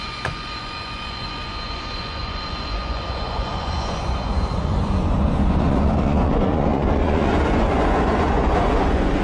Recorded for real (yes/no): no